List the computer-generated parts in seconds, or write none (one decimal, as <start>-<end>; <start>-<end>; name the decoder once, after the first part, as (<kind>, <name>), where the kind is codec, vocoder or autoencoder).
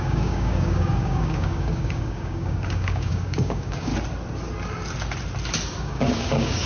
0.0-3.9 (codec, DAC); 5.8-6.7